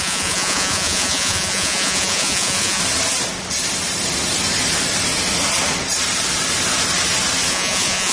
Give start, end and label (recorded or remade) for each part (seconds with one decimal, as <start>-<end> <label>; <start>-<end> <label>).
0.0-2.8 remade; 2.8-7.5 recorded; 7.5-8.1 remade